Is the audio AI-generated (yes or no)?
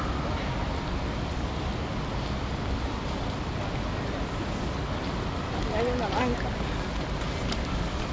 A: no